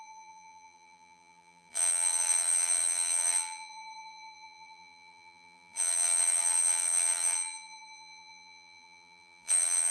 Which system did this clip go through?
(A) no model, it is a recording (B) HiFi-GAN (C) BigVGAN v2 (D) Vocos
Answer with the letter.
C